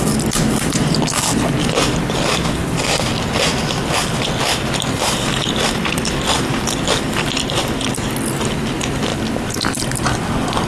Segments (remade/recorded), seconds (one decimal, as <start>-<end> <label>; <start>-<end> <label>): 0.0-10.7 recorded

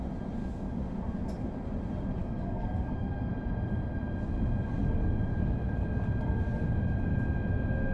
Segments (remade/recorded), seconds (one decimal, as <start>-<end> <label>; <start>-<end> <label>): 0.0-0.4 recorded; 0.4-0.9 remade; 0.9-2.2 recorded; 2.2-3.3 remade; 3.3-7.9 recorded

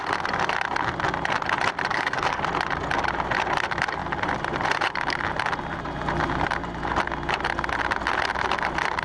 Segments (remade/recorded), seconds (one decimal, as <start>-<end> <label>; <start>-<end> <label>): 0.0-1.9 recorded; 1.9-2.4 remade; 2.4-9.0 recorded

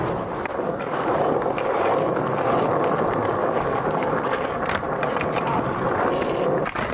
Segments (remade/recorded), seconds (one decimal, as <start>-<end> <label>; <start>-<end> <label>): 0.0-0.5 recorded; 0.5-1.2 remade; 1.2-3.4 recorded; 3.4-4.6 remade; 4.6-6.9 recorded

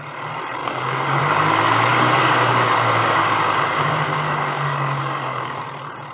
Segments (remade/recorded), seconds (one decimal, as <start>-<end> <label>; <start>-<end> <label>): 0.0-0.6 recorded; 0.6-1.2 remade; 1.2-1.9 recorded; 1.9-5.6 remade; 5.6-6.1 recorded